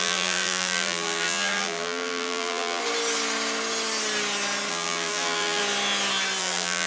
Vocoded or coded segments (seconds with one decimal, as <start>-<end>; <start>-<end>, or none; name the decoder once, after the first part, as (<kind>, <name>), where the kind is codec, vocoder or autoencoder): 0.0-2.8 (vocoder, BigVGAN v2); 4.7-5.6; 6.4-6.9